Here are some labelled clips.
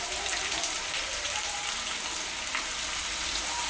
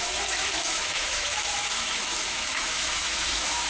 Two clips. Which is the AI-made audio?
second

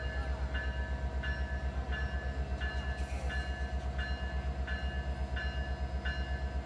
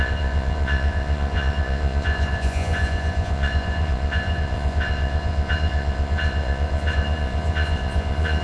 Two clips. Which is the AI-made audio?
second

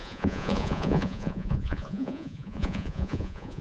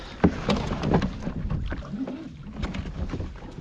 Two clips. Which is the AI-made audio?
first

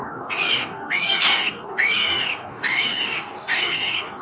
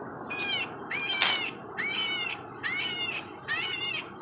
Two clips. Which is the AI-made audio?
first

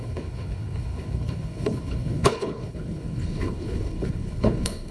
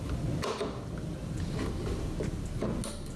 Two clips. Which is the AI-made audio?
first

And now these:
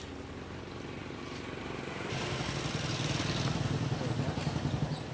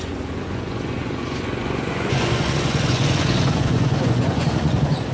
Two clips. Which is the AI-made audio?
second